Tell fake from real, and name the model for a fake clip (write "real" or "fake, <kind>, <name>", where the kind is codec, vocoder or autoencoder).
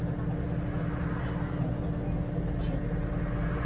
real